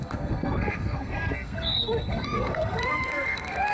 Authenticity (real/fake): fake